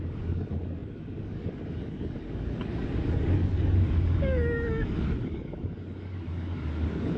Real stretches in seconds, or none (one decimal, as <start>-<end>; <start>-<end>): none